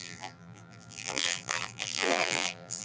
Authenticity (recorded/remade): remade